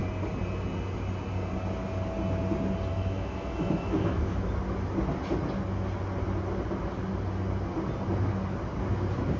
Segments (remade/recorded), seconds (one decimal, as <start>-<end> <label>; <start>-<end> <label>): 0.0-2.9 recorded; 2.9-4.5 remade; 4.5-9.4 recorded